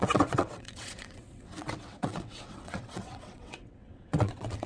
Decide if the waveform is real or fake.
fake